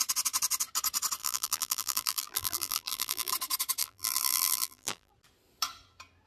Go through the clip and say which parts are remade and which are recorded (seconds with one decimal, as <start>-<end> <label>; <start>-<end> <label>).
0.0-1.2 recorded; 1.2-3.3 remade; 3.3-3.8 recorded; 3.8-5.1 remade; 5.1-6.3 recorded